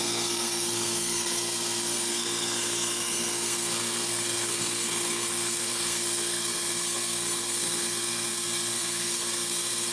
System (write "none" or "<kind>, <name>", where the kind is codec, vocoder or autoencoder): codec, SNAC